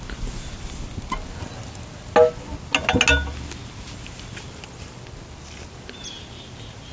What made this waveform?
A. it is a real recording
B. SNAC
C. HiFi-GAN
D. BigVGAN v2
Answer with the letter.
A